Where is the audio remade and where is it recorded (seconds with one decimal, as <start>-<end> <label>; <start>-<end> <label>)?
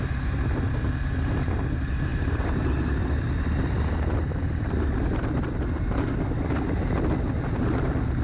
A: 0.0-2.1 recorded; 2.1-6.0 remade; 6.0-8.2 recorded